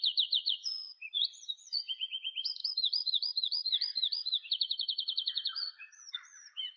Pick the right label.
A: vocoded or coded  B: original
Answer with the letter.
A